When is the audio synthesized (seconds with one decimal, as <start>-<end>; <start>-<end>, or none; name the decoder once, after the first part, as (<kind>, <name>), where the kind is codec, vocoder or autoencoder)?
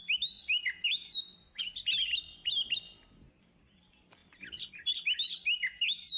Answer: none